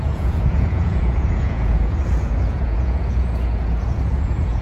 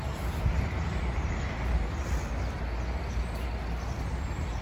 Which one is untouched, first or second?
second